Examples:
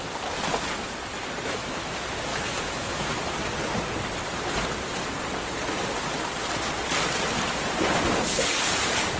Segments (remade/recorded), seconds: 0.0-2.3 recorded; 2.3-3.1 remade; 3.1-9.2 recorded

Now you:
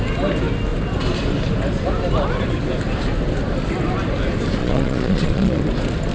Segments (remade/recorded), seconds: 0.0-4.6 recorded; 4.6-5.6 remade; 5.6-6.1 recorded

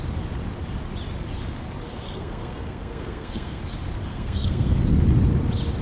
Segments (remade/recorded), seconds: 0.0-1.9 recorded; 1.9-3.6 remade; 3.6-4.1 recorded; 4.1-4.8 remade; 4.8-5.8 recorded

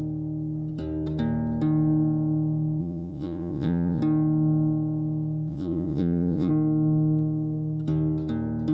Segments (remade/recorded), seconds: 0.0-2.8 recorded; 2.8-4.0 remade; 4.0-5.5 recorded; 5.5-6.5 remade; 6.5-8.7 recorded

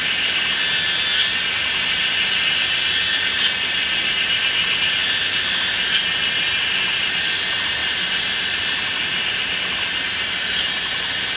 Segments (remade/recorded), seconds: 0.0-11.4 recorded

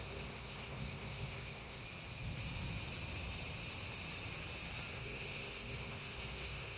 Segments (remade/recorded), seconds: 0.0-1.8 remade; 1.8-4.9 recorded; 4.9-6.8 remade

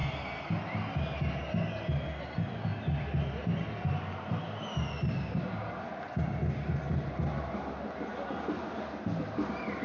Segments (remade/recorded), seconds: 0.0-9.8 recorded

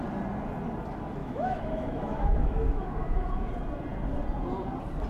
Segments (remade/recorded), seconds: 0.0-1.2 recorded; 1.2-3.5 remade; 3.5-5.1 recorded